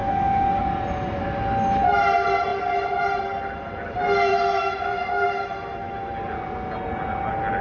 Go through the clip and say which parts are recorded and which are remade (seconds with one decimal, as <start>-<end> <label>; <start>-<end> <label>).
0.0-0.6 remade; 0.6-4.3 recorded; 4.3-6.1 remade; 6.1-7.6 recorded